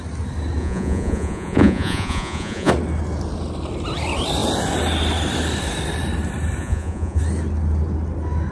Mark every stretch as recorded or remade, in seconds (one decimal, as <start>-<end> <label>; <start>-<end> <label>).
0.0-0.6 recorded; 0.6-2.7 remade; 2.7-6.6 recorded; 6.6-7.2 remade; 7.2-8.5 recorded